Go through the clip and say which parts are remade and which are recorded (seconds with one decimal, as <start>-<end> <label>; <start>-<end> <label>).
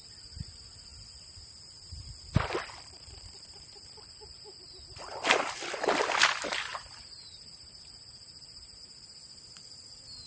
0.0-6.7 recorded; 6.7-9.0 remade; 9.0-10.3 recorded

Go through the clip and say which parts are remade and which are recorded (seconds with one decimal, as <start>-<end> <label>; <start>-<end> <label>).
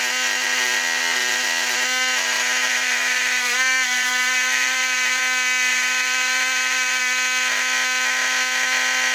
0.0-2.6 recorded; 2.6-5.2 remade; 5.2-5.7 recorded; 5.7-7.0 remade; 7.0-9.1 recorded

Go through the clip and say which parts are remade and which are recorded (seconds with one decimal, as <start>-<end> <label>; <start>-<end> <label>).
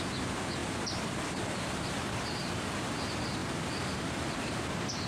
0.0-5.1 recorded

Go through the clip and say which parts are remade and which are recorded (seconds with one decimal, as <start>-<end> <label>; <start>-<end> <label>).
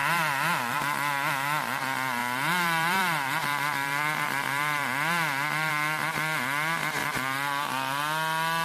0.0-0.8 remade; 0.8-2.2 recorded; 2.2-5.7 remade; 5.7-7.0 recorded; 7.0-7.7 remade; 7.7-8.6 recorded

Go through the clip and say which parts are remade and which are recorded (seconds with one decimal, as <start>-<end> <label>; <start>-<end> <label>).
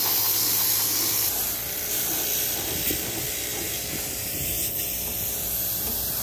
0.0-3.5 recorded; 3.5-4.8 remade; 4.8-6.2 recorded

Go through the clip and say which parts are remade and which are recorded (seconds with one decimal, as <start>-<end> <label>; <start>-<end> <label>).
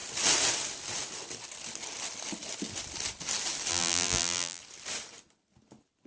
0.0-3.7 recorded; 3.7-4.6 remade; 4.6-6.1 recorded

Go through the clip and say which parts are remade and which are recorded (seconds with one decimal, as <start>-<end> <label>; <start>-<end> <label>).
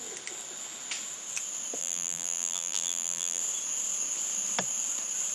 0.0-1.8 recorded; 1.8-3.4 remade; 3.4-5.3 recorded